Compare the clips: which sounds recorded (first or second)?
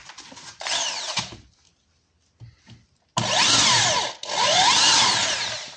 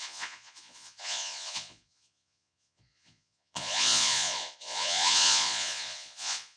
first